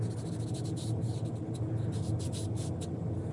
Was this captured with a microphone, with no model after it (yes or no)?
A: yes